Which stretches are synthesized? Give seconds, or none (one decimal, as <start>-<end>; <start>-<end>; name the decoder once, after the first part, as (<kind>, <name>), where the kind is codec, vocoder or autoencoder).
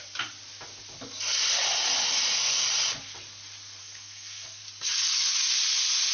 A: 3.8-4.6 (codec, SNAC)